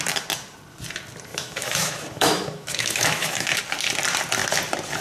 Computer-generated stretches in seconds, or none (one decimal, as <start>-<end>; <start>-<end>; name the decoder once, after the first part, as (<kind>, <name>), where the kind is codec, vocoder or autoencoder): 1.3-3.6 (autoencoder, DAC-VAE)